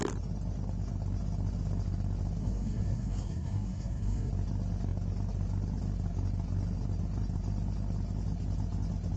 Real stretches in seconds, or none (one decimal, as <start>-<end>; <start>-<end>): 0.0-2.4; 4.3-9.2